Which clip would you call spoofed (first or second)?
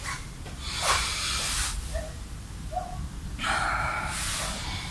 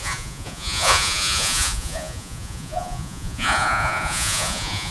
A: second